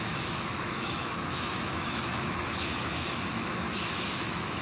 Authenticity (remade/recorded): remade